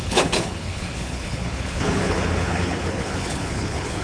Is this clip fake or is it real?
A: fake